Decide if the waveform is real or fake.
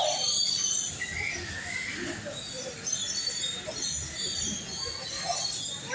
real